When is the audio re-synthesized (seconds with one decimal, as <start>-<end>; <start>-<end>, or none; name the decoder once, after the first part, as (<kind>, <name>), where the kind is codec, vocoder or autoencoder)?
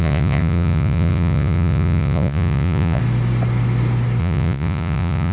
0.0-3.0 (vocoder, Vocos); 4.2-5.3